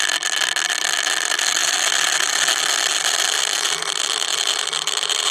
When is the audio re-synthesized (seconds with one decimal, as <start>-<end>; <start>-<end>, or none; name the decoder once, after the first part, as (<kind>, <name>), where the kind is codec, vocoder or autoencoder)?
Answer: none